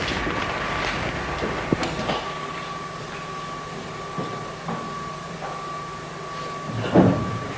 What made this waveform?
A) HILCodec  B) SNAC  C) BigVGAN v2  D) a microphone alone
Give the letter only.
D